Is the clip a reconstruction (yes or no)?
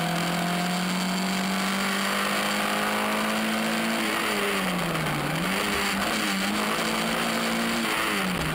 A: no